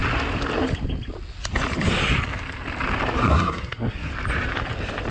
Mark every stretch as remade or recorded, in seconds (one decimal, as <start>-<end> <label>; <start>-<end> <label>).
0.0-3.2 recorded; 3.2-4.1 remade; 4.1-5.1 recorded